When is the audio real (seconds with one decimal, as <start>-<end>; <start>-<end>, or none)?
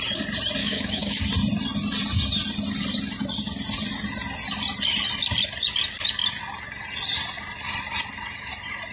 0.0-0.6; 1.2-8.9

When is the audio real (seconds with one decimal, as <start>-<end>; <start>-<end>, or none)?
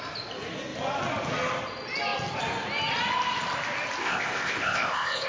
0.0-4.0